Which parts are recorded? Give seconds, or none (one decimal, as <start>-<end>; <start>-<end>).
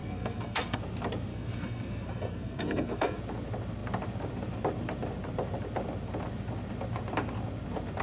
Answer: 0.8-1.3; 3.2-8.0